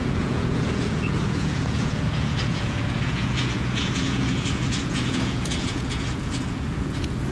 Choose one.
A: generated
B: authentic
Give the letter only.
A